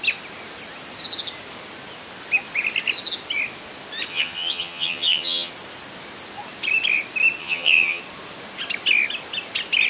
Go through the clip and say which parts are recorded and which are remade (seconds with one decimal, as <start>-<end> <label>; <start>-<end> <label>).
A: 0.0-4.1 recorded; 4.1-5.5 remade; 5.5-7.4 recorded; 7.4-8.0 remade; 8.0-9.9 recorded